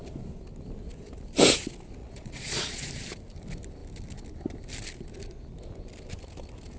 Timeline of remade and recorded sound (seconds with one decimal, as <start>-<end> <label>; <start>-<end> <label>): 0.0-2.0 recorded; 2.0-2.9 remade; 2.9-6.8 recorded